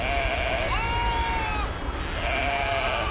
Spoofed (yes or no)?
no